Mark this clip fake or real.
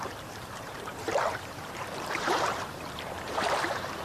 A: fake